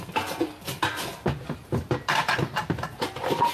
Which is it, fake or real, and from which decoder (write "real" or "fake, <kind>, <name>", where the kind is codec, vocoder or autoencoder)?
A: real